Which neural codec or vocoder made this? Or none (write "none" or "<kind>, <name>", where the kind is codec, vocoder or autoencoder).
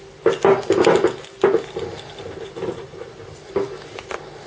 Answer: none